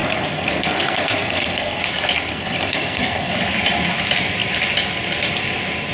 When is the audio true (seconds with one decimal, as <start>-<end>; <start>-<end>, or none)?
1.8-2.3; 3.3-5.9